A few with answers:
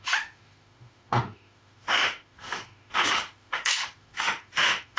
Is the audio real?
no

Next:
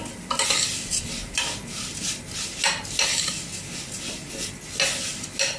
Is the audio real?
yes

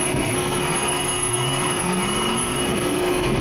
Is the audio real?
no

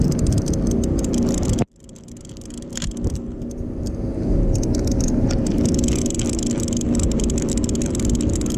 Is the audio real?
yes